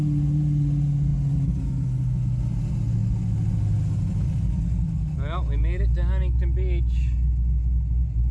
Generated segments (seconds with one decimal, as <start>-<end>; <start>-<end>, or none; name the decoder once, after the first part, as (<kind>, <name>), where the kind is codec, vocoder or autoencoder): none